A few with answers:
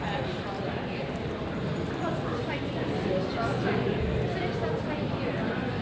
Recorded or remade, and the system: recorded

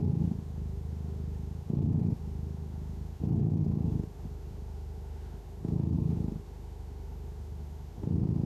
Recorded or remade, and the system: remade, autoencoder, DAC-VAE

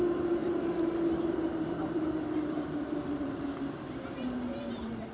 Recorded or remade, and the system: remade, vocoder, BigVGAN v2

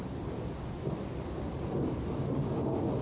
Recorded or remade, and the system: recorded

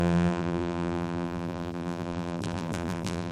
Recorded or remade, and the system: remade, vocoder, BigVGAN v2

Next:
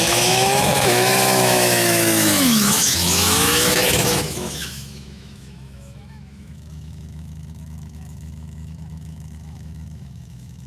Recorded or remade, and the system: remade, autoencoder, DAC-VAE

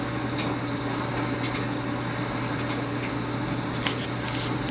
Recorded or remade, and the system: recorded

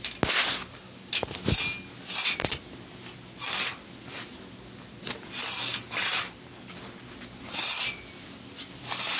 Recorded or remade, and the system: recorded